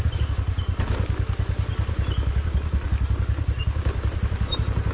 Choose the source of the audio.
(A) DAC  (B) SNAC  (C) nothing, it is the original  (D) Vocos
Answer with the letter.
C